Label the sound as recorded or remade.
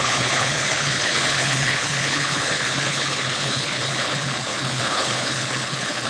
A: remade